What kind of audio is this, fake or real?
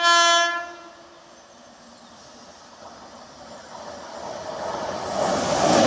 real